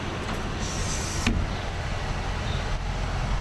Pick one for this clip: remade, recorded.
recorded